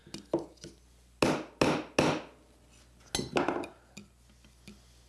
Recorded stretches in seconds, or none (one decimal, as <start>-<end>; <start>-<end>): 0.0-5.1